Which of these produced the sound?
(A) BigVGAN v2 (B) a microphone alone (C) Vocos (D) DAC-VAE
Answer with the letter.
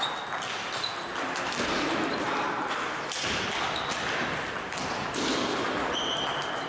B